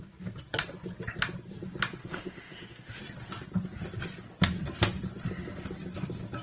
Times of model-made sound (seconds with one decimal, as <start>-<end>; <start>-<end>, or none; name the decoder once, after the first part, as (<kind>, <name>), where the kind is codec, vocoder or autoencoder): 2.0-3.0 (autoencoder, DAC-VAE)